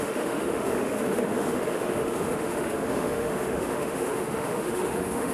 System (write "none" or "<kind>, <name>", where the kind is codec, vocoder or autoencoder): autoencoder, DAC-VAE